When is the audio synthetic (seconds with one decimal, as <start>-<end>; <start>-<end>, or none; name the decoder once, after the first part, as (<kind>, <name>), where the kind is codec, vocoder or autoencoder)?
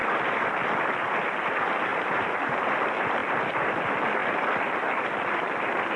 1.9-2.5 (vocoder, BigVGAN v2)